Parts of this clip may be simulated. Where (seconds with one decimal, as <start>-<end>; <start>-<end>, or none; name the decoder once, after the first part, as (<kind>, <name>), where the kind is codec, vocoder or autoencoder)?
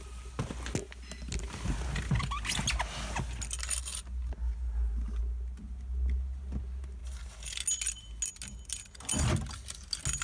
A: none